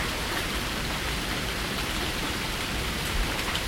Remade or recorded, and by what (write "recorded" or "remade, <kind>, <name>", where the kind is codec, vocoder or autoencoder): remade, vocoder, BigVGAN v2